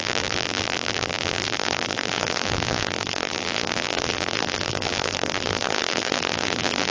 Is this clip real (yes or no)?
no